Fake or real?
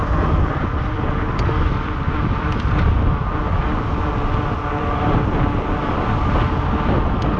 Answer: real